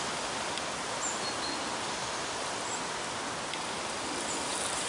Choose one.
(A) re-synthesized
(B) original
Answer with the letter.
B